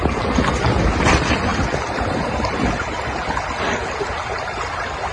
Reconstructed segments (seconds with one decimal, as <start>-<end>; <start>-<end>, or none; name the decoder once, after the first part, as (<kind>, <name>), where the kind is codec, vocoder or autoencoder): none